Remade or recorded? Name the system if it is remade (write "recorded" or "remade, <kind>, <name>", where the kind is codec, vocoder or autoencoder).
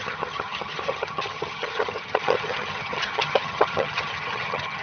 remade, vocoder, HiFi-GAN